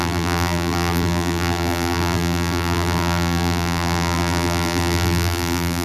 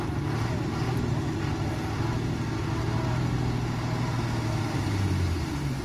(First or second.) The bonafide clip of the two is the second